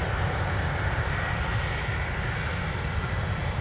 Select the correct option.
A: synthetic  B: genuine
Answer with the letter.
B